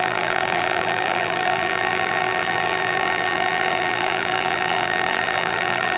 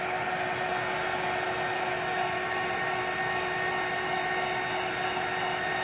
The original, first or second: second